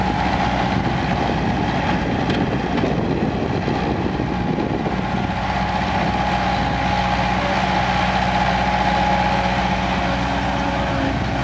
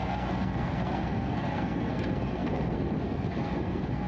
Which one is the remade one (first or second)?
second